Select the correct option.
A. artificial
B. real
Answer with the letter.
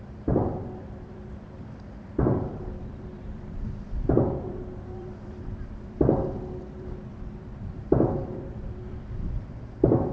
A